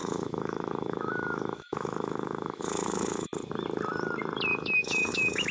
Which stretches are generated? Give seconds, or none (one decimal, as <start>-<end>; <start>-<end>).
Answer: 0.0-3.3; 4.5-5.5